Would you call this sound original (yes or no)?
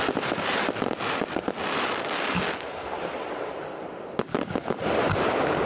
yes